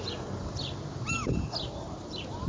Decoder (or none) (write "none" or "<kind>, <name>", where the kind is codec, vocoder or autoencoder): vocoder, BigVGAN v2